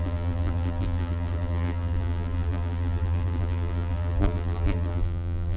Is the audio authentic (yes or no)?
no